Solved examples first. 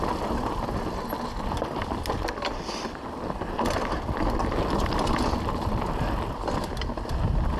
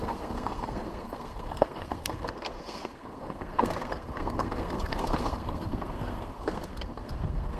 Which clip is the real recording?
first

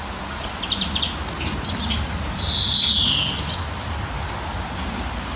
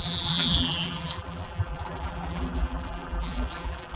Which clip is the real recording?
first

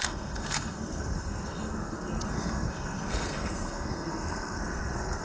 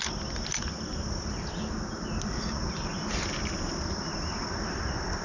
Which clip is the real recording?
second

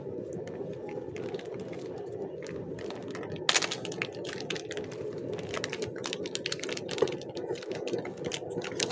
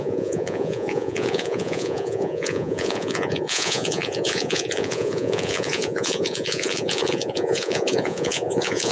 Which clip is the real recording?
first